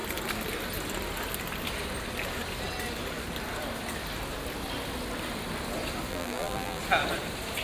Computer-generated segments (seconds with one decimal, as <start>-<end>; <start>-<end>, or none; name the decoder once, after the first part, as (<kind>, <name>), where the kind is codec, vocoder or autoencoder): 6.1-6.8 (vocoder, BigVGAN v2)

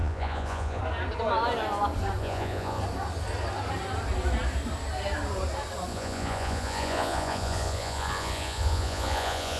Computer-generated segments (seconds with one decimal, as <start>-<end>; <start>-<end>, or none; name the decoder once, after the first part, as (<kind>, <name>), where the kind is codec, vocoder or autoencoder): 0.0-0.8 (vocoder, Vocos); 2.2-2.8; 5.9-9.6

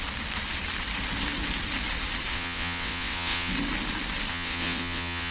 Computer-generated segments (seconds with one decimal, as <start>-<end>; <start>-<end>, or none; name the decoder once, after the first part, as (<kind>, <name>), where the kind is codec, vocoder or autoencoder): 2.3-3.5 (vocoder, WaveNeXt); 4.3-5.3